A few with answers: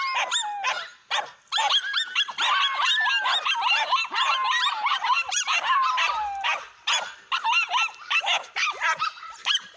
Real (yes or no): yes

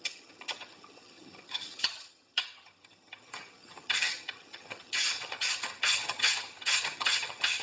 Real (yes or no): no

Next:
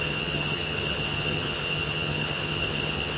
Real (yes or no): no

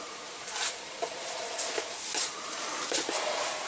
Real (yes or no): yes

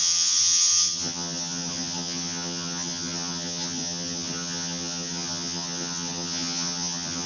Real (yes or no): no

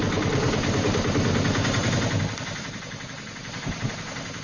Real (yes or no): yes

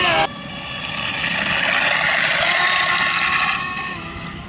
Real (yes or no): yes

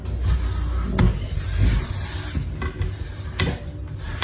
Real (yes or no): yes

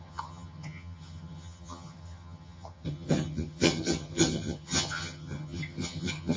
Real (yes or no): no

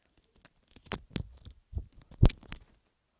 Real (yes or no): yes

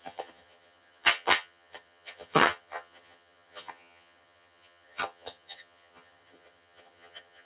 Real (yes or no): no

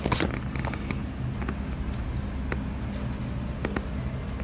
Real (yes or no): yes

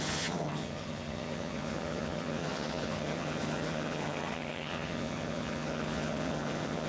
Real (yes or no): no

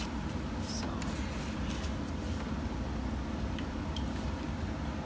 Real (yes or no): yes